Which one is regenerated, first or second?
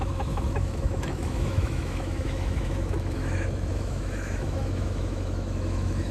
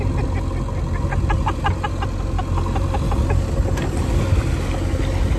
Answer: first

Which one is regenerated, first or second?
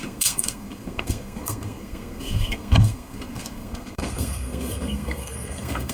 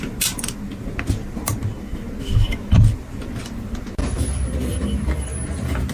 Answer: first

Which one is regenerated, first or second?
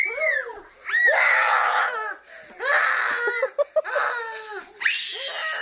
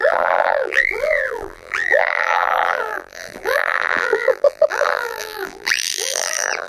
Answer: second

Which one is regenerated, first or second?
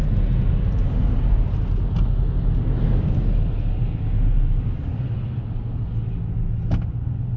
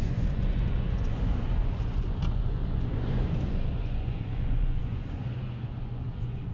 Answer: second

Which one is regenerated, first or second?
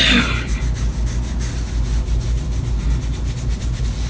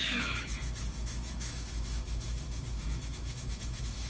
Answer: second